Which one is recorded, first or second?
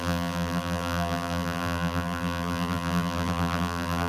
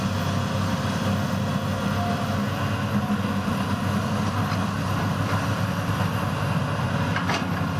second